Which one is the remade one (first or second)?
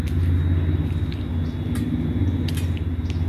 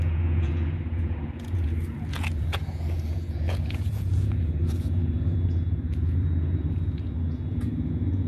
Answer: second